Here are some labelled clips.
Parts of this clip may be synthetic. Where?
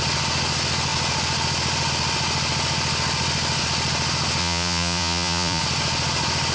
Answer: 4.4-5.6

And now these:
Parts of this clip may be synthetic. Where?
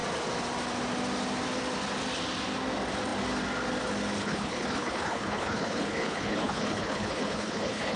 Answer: 4.2-8.0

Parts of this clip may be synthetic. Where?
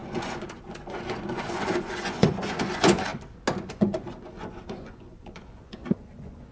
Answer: 0.0-3.1; 3.7-6.5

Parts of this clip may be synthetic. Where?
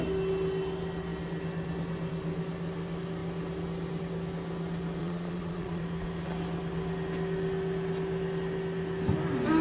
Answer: 5.0-5.8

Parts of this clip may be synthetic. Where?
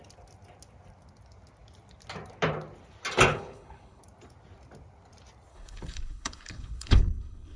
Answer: 3.3-4.0; 5.5-7.6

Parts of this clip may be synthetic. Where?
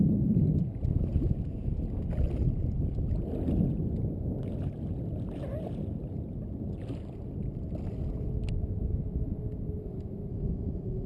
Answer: 10.3-11.1